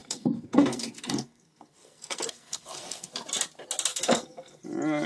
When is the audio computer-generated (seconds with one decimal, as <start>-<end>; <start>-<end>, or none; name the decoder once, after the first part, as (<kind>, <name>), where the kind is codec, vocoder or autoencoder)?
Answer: 0.0-3.1 (codec, SNAC); 3.9-4.6